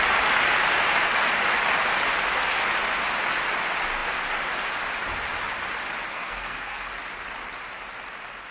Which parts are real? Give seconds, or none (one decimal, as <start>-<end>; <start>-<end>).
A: 0.0-6.1; 6.9-8.5